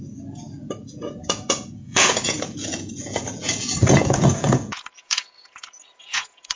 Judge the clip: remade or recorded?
remade